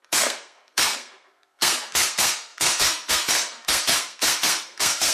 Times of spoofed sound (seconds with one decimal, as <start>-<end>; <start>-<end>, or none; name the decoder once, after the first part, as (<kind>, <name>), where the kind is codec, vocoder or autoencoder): 0.0-5.1 (codec, SNAC)